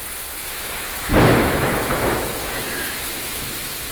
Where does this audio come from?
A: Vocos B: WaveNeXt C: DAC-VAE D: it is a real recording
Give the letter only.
C